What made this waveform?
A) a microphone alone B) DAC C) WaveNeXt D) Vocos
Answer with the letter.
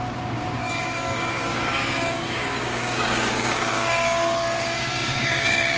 B